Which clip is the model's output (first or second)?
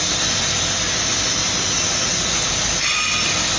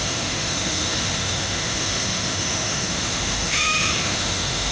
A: second